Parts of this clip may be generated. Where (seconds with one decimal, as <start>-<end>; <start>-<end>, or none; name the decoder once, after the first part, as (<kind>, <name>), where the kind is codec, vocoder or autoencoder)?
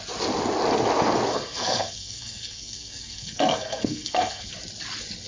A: 1.3-4.5 (codec, SNAC)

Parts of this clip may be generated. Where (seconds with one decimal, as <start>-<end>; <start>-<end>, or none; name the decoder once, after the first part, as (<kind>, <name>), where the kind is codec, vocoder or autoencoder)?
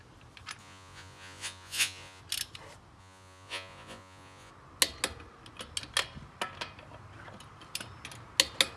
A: 0.6-2.2 (vocoder, Vocos); 3.0-4.5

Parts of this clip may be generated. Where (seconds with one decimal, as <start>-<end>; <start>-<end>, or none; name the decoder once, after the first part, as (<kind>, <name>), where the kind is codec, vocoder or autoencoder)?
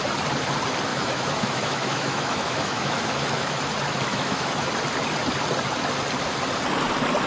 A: 0.9-3.6 (autoencoder, DAC-VAE); 4.1-4.7